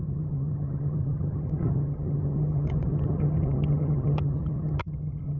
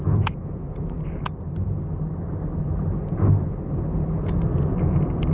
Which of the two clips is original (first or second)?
second